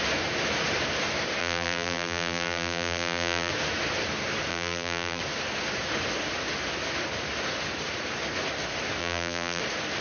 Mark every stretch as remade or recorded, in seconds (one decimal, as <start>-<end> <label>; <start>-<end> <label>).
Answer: 0.0-1.4 recorded; 1.4-3.5 remade; 3.5-4.5 recorded; 4.5-5.2 remade; 5.2-9.0 recorded; 9.0-9.6 remade; 9.6-10.0 recorded